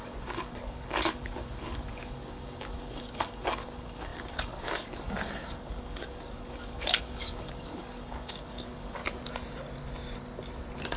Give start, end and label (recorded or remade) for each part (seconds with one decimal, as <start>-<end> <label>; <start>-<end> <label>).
0.0-9.0 remade; 9.0-11.0 recorded

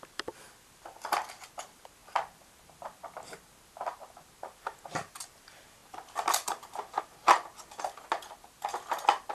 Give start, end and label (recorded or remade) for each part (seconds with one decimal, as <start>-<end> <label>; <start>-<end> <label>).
0.0-9.3 recorded

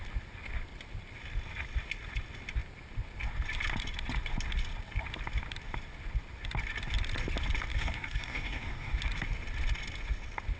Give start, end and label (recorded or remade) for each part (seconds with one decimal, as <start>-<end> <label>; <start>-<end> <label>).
0.0-7.7 recorded; 7.7-9.0 remade; 9.0-10.6 recorded